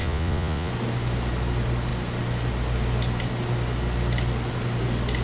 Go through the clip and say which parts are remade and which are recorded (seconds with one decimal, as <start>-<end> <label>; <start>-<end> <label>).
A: 0.0-0.7 remade; 0.7-5.2 recorded